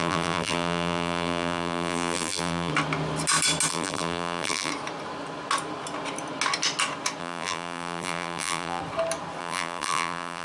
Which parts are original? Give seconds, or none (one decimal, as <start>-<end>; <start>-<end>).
2.7-3.7; 4.7-7.2; 8.8-9.4